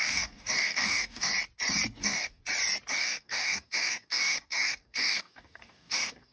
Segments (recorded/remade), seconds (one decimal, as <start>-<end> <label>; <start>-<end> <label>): 0.0-1.3 remade; 1.3-2.0 recorded; 2.0-2.4 remade; 2.4-2.9 recorded; 2.9-6.3 remade